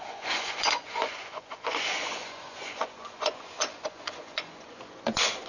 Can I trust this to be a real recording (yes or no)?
no